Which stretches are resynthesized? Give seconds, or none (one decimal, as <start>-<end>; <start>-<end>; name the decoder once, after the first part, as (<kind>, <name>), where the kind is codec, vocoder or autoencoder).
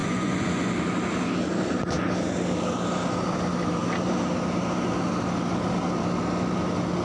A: 0.0-0.7 (vocoder, Vocos)